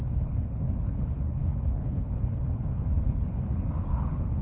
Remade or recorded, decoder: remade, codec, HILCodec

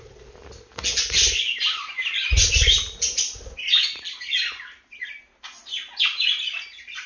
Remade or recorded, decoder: recorded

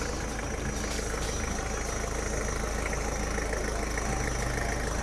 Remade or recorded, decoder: recorded